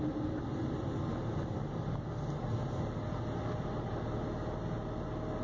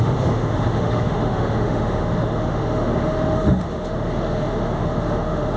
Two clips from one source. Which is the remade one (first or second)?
second